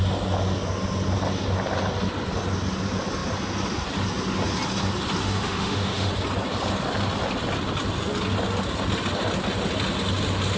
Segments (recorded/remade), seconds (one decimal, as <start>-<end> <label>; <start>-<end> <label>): 0.0-5.2 recorded; 5.2-6.1 remade; 6.1-10.6 recorded